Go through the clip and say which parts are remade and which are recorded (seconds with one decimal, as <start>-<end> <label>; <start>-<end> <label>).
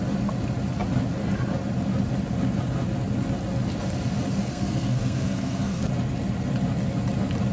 0.0-4.5 recorded; 4.5-5.9 remade; 5.9-7.5 recorded